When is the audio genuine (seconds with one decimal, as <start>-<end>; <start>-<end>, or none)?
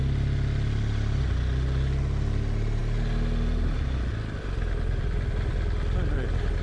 0.0-6.6